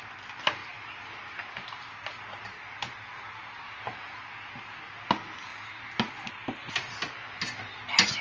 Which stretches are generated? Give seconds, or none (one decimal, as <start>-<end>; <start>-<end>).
none